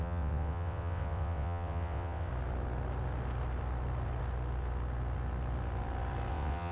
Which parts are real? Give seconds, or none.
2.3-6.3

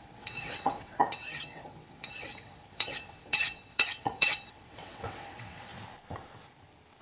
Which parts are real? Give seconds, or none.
5.7-7.0